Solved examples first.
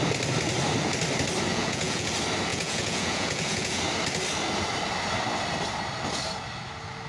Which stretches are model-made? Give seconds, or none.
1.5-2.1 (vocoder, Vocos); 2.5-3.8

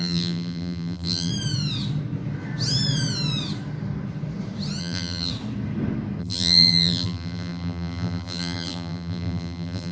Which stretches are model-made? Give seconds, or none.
0.0-1.3 (vocoder, BigVGAN v2); 4.8-5.3; 6.2-9.9

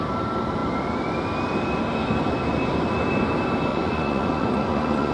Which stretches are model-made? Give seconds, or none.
3.7-5.1 (vocoder, Vocos)

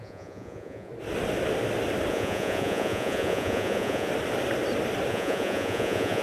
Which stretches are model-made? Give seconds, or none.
0.0-0.9 (vocoder, Vocos); 2.1-4.1; 5.1-6.2

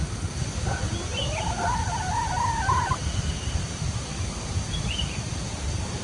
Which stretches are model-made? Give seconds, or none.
none